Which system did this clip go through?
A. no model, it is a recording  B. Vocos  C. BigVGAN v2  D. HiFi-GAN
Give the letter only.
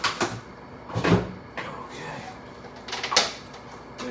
A